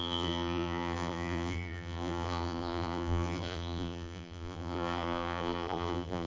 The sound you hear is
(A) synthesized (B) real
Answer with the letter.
A